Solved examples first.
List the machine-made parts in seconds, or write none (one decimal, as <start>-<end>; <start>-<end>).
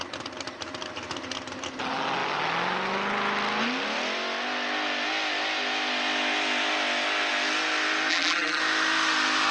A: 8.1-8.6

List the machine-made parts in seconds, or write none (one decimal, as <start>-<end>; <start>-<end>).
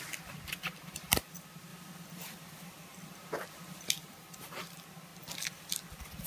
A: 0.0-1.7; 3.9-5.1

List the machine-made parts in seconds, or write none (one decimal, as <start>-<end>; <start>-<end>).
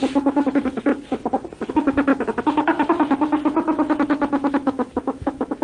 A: 0.0-0.9; 1.7-2.1; 4.5-5.6